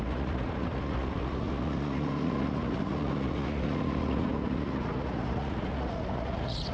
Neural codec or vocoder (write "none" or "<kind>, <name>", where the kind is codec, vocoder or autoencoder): vocoder, Vocos